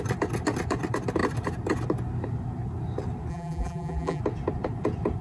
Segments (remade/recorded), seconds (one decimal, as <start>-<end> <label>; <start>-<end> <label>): 0.0-3.3 recorded; 3.3-4.2 remade; 4.2-5.2 recorded